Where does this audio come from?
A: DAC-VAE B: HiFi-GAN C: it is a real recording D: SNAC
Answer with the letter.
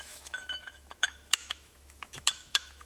A